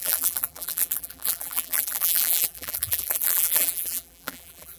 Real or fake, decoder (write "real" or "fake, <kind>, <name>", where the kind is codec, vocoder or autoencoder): fake, vocoder, BigVGAN v2